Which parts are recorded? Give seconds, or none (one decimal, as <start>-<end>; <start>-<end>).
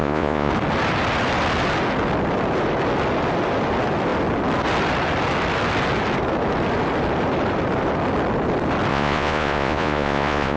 0.5-8.9